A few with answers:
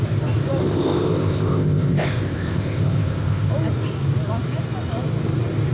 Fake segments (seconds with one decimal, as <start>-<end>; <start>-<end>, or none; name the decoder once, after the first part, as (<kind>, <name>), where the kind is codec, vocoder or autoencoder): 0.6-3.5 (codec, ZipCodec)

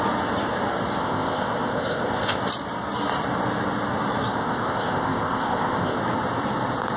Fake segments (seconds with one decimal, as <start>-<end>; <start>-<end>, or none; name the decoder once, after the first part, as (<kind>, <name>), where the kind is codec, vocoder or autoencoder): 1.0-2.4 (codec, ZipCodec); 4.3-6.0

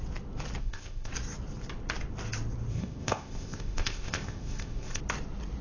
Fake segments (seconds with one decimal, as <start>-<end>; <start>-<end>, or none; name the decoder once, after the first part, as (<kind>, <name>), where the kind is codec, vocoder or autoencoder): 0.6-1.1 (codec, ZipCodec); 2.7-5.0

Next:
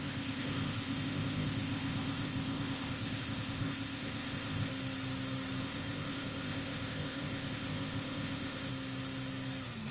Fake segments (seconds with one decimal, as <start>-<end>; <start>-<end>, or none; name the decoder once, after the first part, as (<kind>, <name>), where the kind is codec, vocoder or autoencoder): 0.0-4.7 (codec, ZipCodec); 5.6-8.7